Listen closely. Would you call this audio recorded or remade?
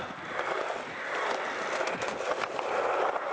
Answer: recorded